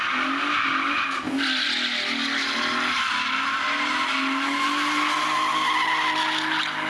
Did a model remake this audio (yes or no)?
no